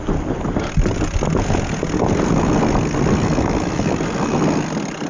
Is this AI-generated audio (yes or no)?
no